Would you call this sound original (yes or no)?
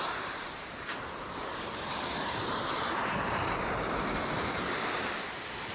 no